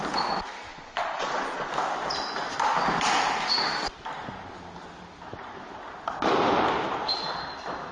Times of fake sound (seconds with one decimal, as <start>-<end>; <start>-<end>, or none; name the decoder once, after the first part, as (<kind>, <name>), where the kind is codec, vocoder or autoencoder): 0.7-1.7 (vocoder, Vocos)